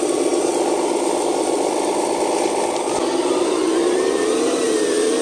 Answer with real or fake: real